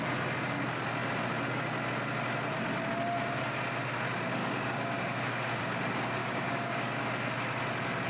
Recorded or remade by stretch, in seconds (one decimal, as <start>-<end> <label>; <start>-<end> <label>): 0.0-4.4 recorded; 4.4-5.6 remade; 5.6-6.2 recorded; 6.2-7.1 remade; 7.1-8.1 recorded